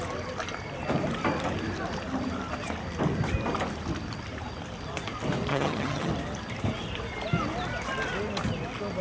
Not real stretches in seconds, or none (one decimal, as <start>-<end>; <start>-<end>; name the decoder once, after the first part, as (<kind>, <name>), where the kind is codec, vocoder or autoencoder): 5.5-6.1 (vocoder, HiFi-GAN)

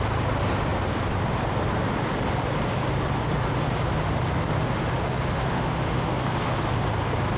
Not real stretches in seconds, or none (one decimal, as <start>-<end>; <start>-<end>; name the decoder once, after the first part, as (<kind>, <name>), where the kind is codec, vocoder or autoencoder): 5.4-6.1 (autoencoder, DAC-VAE)

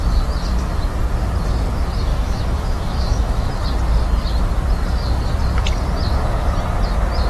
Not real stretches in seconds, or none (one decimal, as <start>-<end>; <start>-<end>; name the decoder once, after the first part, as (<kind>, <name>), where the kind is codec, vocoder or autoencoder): 2.1-3.5 (autoencoder, DAC-VAE)

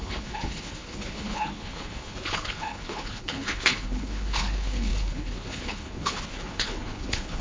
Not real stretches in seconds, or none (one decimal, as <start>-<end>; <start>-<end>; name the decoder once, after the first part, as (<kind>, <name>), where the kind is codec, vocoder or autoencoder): 0.0-7.4 (codec, HILCodec)

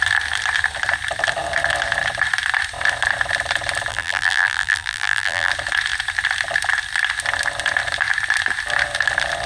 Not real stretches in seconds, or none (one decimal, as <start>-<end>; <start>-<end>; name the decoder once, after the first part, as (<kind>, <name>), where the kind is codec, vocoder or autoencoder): 3.9-5.5 (vocoder, BigVGAN v2)